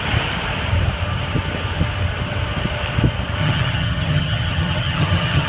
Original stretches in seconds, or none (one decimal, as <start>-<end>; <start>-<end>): 0.0-3.4